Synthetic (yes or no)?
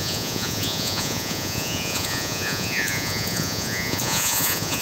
yes